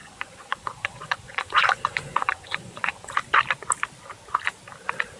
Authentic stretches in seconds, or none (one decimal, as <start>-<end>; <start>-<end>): 3.1-5.2